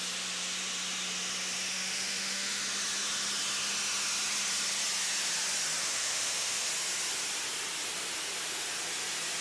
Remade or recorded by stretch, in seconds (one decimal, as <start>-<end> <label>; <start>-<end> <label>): 0.0-1.7 recorded; 1.7-2.6 remade; 2.6-5.8 recorded; 5.8-6.7 remade; 6.7-9.4 recorded